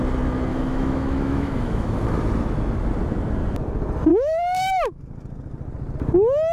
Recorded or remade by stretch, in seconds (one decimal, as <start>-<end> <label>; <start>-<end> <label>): 0.0-0.5 recorded; 0.5-2.0 remade; 2.0-4.1 recorded; 4.1-5.0 remade; 5.0-6.5 recorded